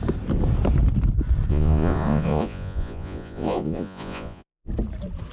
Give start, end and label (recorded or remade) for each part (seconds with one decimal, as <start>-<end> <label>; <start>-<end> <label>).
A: 0.0-1.5 recorded; 1.5-4.7 remade; 4.7-5.3 recorded